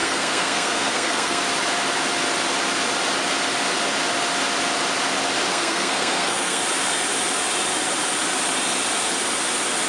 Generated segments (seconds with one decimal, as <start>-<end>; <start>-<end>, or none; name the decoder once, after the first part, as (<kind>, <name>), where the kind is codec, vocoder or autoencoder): 0.0-1.4 (codec, SNAC); 5.5-6.6